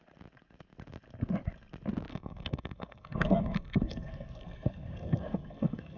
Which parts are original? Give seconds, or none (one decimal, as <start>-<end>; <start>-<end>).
0.0-2.1